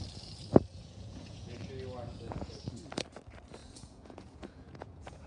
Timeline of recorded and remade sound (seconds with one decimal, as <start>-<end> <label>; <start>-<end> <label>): 0.0-0.7 recorded; 0.7-1.7 remade; 1.7-2.1 recorded; 2.1-2.7 remade; 2.7-3.6 recorded; 3.6-5.3 remade